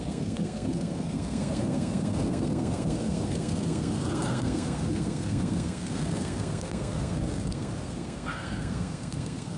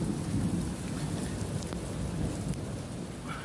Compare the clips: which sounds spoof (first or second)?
first